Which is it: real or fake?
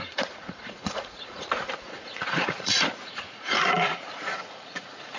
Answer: fake